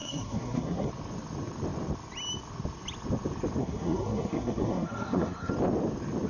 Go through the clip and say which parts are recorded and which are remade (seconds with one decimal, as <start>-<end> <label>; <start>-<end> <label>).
0.0-0.9 remade; 0.9-3.6 recorded; 3.6-5.5 remade; 5.5-6.3 recorded